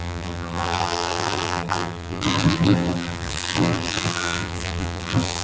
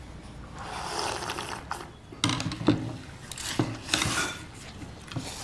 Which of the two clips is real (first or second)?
second